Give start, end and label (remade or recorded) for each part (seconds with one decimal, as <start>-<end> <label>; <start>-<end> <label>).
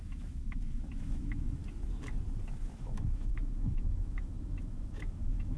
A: 0.0-1.6 remade; 1.6-2.5 recorded; 2.5-5.6 remade